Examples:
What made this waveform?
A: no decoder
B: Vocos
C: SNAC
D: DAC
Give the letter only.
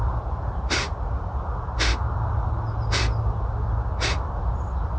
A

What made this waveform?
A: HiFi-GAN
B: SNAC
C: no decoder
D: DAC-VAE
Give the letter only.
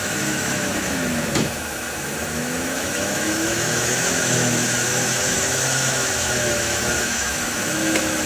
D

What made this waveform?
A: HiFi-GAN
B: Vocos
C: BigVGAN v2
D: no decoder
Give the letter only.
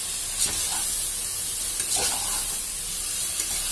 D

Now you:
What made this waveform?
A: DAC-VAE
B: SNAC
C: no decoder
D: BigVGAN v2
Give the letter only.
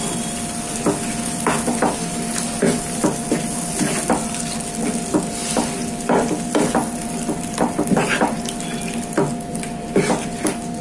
C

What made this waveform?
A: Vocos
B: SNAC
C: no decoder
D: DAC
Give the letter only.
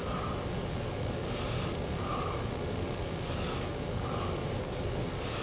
D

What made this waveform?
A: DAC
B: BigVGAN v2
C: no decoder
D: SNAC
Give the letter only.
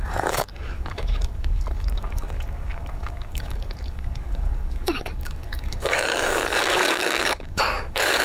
A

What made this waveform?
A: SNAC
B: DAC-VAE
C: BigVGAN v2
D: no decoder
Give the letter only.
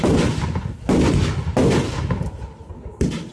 D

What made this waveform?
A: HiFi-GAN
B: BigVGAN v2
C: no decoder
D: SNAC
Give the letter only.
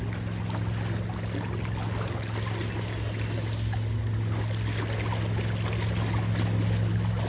C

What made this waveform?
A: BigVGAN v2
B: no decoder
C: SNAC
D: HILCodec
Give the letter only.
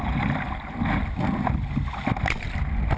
B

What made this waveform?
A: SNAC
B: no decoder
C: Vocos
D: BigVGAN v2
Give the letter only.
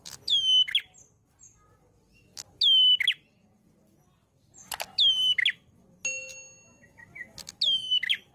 B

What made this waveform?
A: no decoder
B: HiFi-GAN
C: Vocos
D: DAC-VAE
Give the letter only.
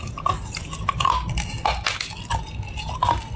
A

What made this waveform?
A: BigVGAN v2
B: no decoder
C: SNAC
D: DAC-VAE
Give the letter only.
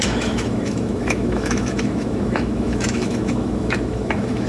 D